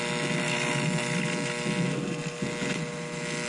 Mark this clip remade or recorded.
recorded